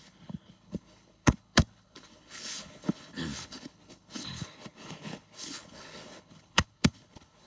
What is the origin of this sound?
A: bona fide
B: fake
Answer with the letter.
B